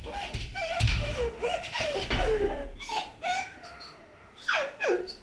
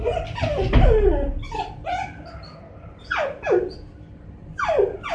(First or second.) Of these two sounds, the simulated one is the first